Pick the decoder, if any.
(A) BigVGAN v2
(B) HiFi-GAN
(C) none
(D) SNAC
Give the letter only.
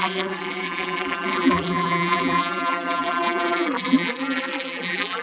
A